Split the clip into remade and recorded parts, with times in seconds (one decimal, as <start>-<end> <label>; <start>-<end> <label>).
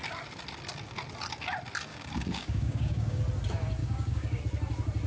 0.0-1.9 recorded; 1.9-3.2 remade; 3.2-3.8 recorded; 3.8-4.4 remade; 4.4-5.1 recorded